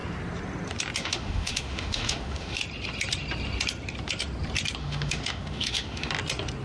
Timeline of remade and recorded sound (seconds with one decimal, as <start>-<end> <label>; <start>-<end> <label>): 0.0-1.0 recorded; 1.0-2.6 remade; 2.6-4.8 recorded; 4.8-6.1 remade; 6.1-6.6 recorded